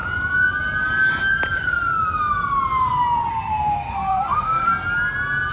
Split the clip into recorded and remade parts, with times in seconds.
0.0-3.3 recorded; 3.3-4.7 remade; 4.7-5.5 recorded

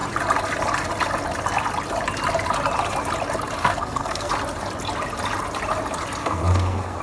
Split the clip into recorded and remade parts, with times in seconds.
0.0-3.6 recorded; 3.6-4.3 remade; 4.3-6.2 recorded; 6.2-7.0 remade